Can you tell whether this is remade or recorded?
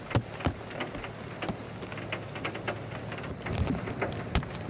recorded